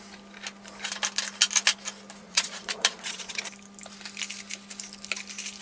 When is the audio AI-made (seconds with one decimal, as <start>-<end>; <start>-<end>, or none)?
2.2-3.4